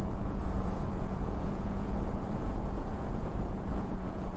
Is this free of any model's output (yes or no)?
no